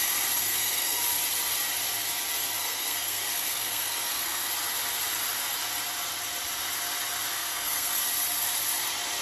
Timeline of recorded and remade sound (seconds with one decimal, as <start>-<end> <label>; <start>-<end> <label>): 0.0-0.4 recorded; 0.4-1.0 remade; 1.0-2.6 recorded; 2.6-4.5 remade; 4.5-7.3 recorded; 7.3-7.9 remade; 7.9-9.2 recorded